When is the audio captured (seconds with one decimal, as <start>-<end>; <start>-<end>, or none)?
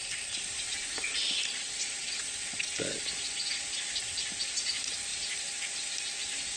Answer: 0.0-2.0; 2.7-6.6